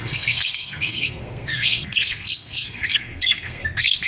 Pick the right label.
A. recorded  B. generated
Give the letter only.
B